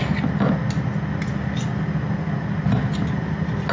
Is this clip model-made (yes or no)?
no